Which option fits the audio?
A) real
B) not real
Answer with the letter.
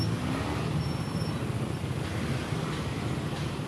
A